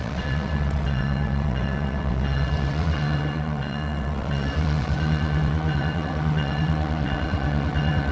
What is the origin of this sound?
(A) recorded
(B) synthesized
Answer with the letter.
B